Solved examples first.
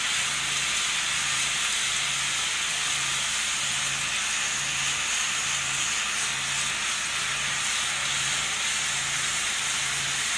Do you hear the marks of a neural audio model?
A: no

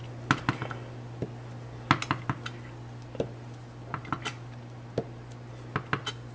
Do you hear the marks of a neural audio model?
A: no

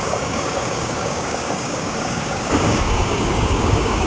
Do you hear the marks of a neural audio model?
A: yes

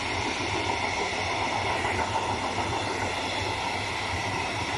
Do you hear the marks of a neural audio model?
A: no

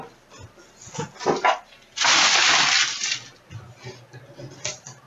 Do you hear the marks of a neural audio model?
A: no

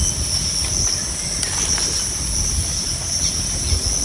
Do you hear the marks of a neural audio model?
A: no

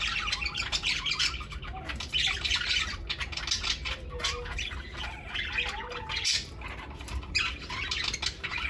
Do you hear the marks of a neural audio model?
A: no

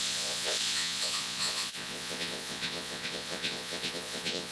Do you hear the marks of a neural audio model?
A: yes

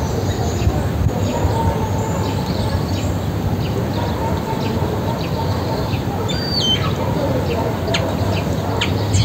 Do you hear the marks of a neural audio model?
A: no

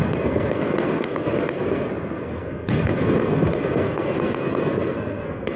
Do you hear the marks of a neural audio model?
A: yes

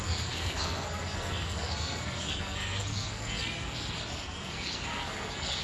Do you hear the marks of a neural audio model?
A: yes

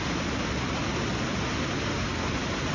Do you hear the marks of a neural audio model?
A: no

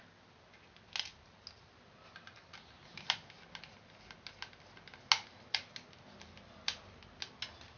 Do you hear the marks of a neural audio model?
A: no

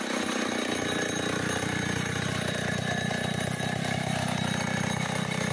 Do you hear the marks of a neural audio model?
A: no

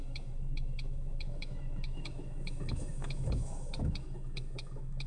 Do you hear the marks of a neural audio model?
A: yes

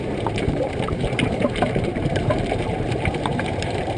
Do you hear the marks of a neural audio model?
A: yes